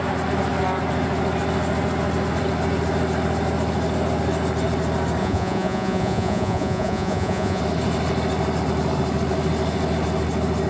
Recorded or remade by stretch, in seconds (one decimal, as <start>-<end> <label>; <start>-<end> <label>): 0.0-5.2 recorded; 5.2-7.6 remade; 7.6-10.7 recorded